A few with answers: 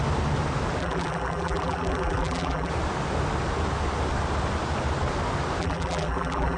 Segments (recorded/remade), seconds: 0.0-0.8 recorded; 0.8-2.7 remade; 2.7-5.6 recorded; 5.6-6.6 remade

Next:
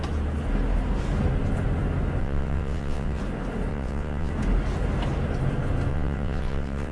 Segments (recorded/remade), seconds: 0.0-2.2 recorded; 2.2-3.2 remade; 3.2-3.7 recorded; 3.7-4.3 remade; 4.3-5.9 recorded; 5.9-6.9 remade

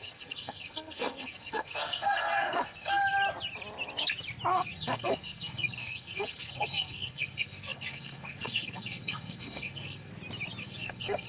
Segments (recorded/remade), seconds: 0.0-3.0 remade; 3.0-4.5 recorded; 4.5-10.1 remade; 10.1-10.6 recorded; 10.6-11.3 remade